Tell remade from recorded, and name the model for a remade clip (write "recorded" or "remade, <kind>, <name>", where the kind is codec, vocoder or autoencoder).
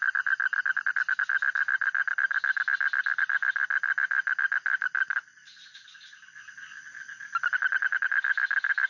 recorded